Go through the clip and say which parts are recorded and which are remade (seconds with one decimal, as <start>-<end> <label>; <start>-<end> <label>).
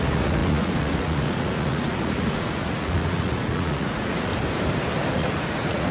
0.0-4.3 remade; 4.3-5.1 recorded; 5.1-5.9 remade